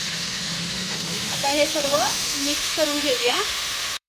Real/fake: fake